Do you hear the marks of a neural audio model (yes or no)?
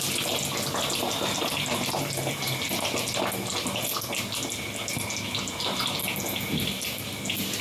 no